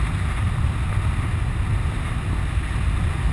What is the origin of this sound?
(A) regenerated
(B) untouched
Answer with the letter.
B